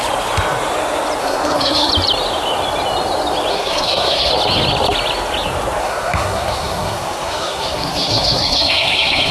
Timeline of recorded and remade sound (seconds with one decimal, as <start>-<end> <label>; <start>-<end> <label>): 0.0-1.2 recorded; 1.2-1.9 remade; 1.9-3.5 recorded; 3.5-4.3 remade; 4.3-5.8 recorded; 5.8-9.3 remade

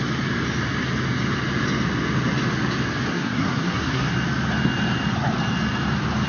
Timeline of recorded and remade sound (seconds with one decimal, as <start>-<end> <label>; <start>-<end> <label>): 0.0-3.1 recorded; 3.1-4.1 remade; 4.1-6.3 recorded

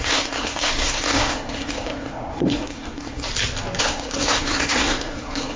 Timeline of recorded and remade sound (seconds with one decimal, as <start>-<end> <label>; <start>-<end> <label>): 0.0-3.3 remade; 3.3-3.8 recorded; 3.8-5.6 remade

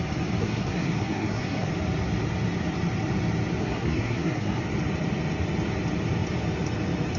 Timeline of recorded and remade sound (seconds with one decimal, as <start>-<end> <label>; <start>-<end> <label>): 0.0-0.4 recorded; 0.4-1.7 remade; 1.7-3.6 recorded; 3.6-4.6 remade; 4.6-7.2 recorded

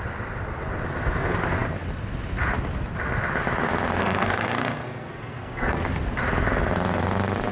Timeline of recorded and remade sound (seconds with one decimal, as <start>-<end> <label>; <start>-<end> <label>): 0.0-4.0 recorded; 4.0-5.8 remade; 5.8-7.5 recorded